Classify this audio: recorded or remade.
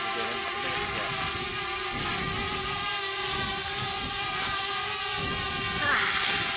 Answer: recorded